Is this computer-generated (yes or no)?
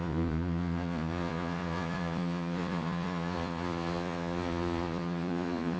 yes